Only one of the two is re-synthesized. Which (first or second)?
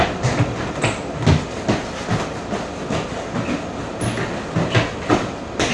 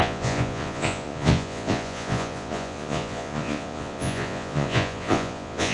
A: second